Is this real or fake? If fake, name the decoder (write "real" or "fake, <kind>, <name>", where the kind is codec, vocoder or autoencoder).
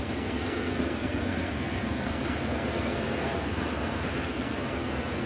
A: fake, codec, SNAC